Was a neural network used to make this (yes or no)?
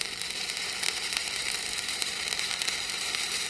yes